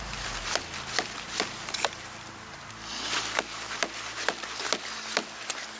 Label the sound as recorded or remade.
recorded